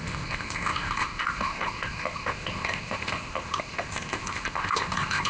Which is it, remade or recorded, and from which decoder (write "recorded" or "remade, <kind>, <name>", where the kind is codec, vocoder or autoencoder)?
remade, codec, ZipCodec